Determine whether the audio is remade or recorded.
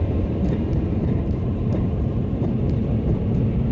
remade